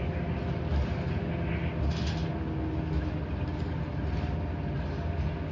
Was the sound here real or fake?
real